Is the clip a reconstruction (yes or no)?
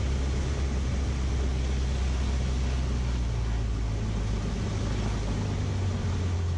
no